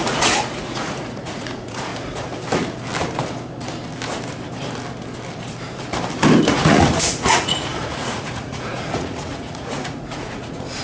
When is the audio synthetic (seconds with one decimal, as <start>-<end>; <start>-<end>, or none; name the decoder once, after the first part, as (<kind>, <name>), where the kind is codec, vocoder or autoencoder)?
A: 0.0-1.9 (vocoder, Vocos); 6.5-10.8